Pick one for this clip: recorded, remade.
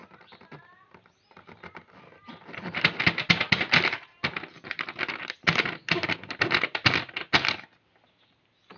recorded